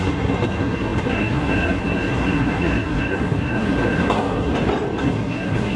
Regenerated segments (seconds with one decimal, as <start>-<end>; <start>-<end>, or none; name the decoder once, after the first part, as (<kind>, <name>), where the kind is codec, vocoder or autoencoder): 0.0-4.5 (codec, SNAC); 5.0-5.8